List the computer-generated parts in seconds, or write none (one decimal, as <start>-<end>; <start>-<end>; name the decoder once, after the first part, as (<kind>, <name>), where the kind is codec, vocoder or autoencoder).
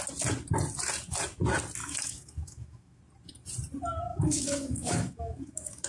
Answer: 1.8-3.0 (autoencoder, DAC-VAE); 4.1-5.9